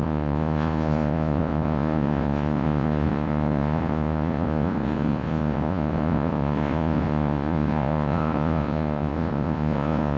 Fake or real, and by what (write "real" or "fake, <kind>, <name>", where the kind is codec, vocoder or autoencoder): fake, vocoder, Vocos